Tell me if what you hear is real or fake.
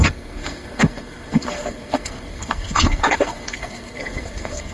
fake